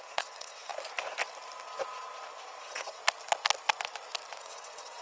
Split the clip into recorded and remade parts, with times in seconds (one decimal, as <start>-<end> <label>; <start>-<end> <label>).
0.0-0.7 remade; 0.7-2.6 recorded; 2.6-3.0 remade; 3.0-4.4 recorded; 4.4-5.0 remade